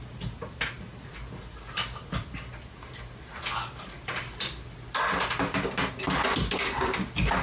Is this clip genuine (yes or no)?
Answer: yes